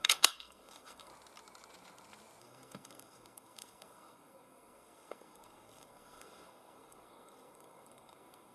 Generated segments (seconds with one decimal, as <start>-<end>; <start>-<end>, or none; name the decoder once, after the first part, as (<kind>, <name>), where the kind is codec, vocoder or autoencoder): 0.0-1.1 (codec, SNAC); 2.4-8.5